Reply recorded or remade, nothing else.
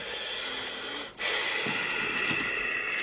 recorded